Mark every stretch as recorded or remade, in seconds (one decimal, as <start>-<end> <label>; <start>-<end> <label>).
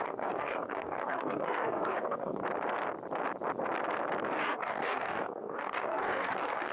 0.0-2.4 remade; 2.4-4.3 recorded; 4.3-6.7 remade